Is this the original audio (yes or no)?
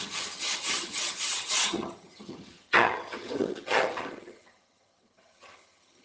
no